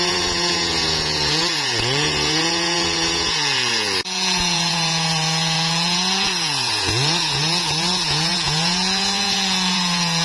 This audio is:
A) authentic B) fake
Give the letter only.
B